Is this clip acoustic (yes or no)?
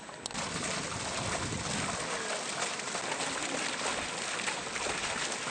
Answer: yes